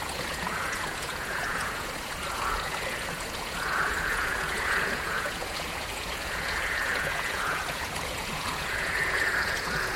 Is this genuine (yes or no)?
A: no